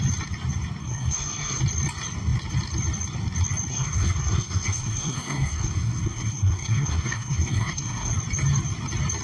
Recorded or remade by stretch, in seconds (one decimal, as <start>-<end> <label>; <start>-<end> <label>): 0.0-0.8 recorded; 0.8-1.6 remade; 1.6-3.7 recorded; 3.7-8.1 remade; 8.1-9.2 recorded